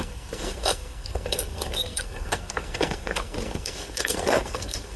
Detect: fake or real fake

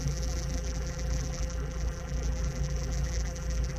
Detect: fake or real fake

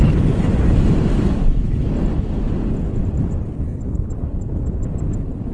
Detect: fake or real real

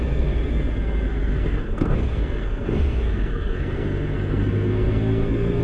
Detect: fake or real fake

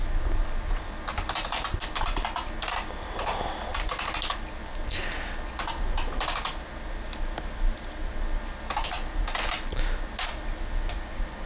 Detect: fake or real real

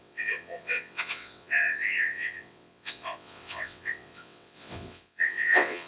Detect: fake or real fake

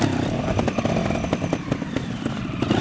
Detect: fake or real real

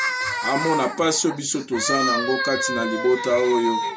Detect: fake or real real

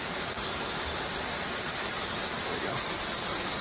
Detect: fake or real real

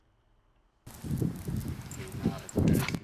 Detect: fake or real real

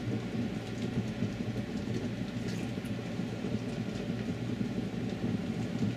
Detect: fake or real real